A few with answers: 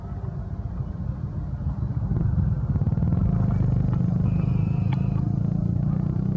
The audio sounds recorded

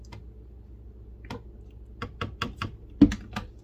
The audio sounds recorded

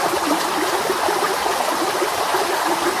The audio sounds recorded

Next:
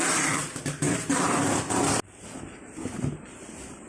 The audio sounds recorded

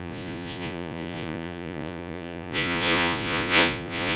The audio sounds remade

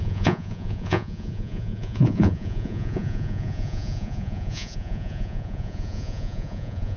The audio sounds remade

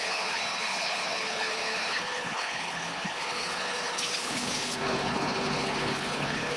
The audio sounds remade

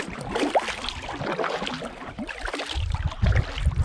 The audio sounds recorded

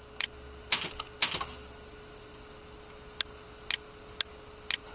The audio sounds recorded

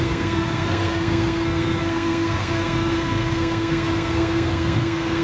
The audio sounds remade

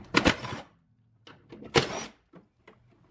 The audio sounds recorded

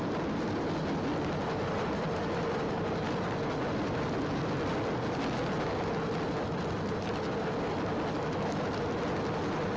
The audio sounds recorded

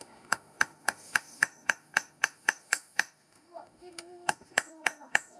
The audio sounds remade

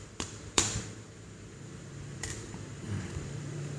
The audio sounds remade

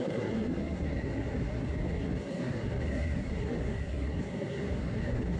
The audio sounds remade